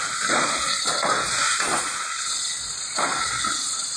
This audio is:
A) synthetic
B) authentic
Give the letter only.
A